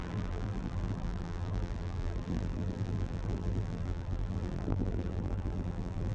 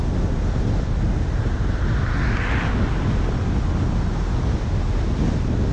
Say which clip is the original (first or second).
second